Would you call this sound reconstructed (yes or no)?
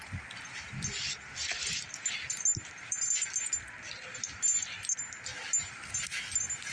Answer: no